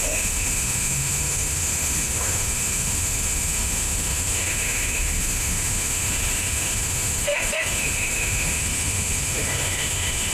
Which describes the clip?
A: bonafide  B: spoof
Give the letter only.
B